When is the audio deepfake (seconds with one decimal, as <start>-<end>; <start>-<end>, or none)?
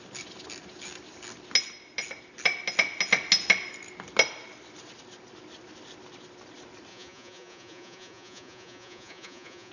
6.9-9.7